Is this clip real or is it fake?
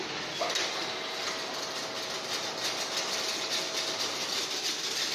real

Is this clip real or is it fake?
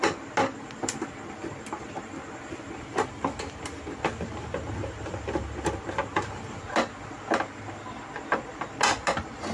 real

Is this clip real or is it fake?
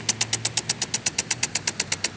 real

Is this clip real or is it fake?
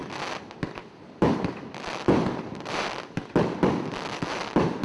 real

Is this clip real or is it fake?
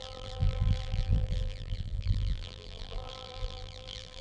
fake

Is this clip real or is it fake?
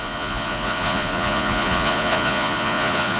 fake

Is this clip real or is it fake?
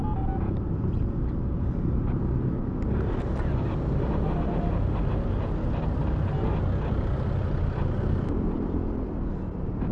real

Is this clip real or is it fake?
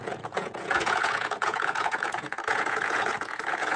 fake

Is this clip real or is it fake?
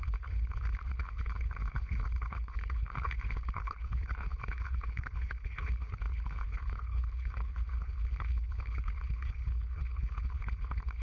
fake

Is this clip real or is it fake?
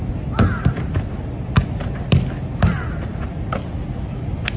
real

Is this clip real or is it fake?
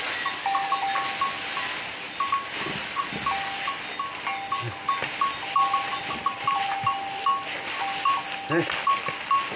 real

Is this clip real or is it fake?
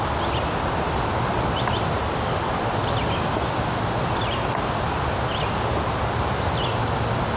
real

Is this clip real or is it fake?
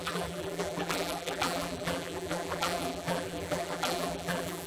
fake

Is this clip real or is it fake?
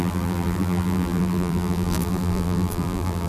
fake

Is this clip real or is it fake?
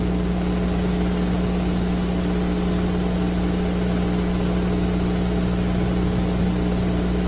real